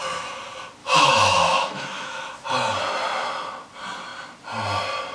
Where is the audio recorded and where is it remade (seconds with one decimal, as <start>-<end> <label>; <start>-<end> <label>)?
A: 0.0-0.8 recorded; 0.8-2.3 remade; 2.3-5.1 recorded